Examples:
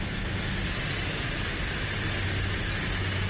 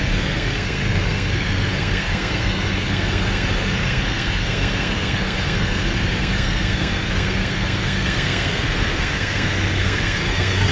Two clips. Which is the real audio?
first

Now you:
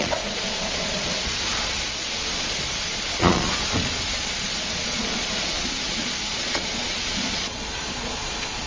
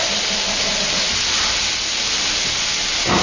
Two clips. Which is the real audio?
second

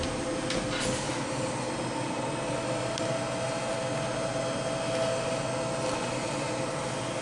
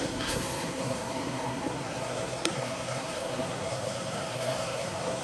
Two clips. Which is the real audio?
first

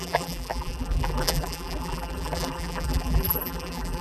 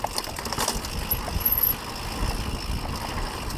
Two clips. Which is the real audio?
second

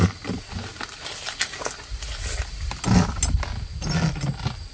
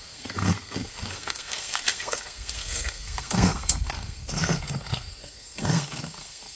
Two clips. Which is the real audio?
first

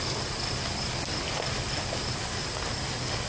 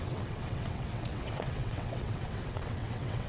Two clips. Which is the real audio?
first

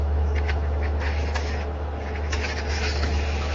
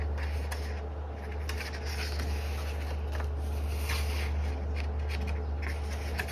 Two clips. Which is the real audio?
second